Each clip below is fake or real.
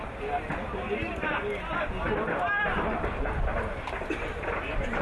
real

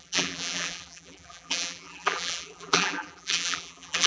fake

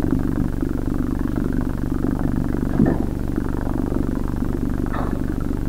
real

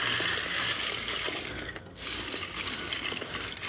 real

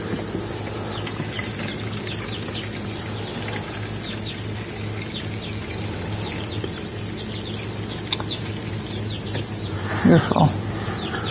real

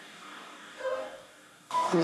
fake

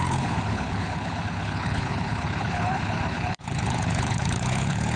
fake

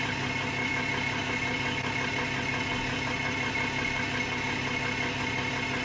real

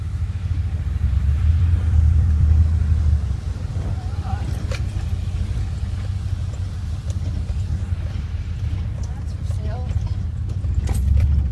fake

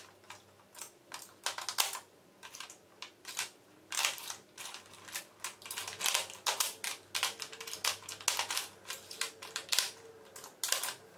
real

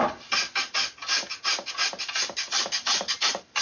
real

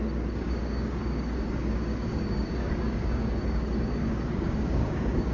fake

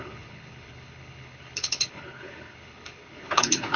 fake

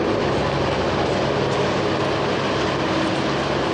real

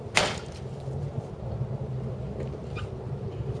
real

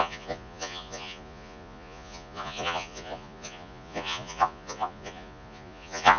fake